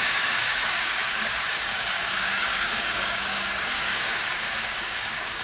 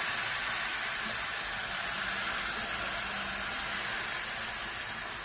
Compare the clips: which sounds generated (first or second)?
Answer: first